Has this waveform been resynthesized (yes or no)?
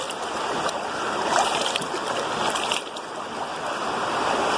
no